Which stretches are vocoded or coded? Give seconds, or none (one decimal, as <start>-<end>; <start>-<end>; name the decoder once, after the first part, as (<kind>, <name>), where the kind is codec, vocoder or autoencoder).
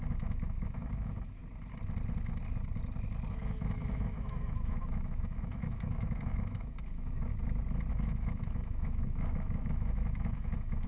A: 0.0-1.4 (autoencoder, DAC-VAE); 3.3-7.3; 7.9-10.9